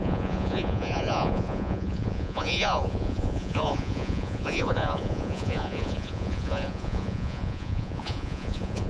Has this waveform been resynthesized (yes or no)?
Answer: yes